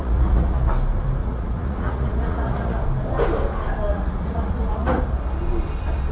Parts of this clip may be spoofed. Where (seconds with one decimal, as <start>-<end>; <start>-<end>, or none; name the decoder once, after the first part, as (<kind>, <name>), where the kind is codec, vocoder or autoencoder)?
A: 0.0-0.7 (vocoder, Vocos); 1.2-2.8; 3.9-5.0